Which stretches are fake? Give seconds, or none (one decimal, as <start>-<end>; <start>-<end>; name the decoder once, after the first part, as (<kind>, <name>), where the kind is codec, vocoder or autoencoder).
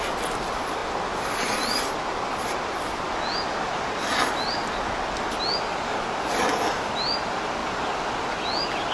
none